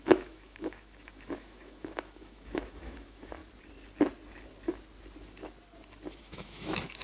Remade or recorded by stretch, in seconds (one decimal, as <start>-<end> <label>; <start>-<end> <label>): 0.0-3.4 remade; 3.4-6.2 recorded; 6.2-7.0 remade